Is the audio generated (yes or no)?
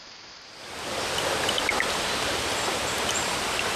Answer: yes